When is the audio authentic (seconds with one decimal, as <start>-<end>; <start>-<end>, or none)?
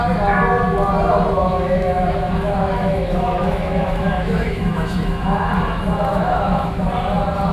0.0-1.4; 5.5-6.1; 6.9-7.5